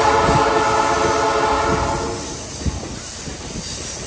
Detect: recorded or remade recorded